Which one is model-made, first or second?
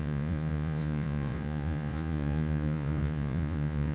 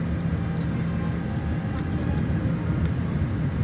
first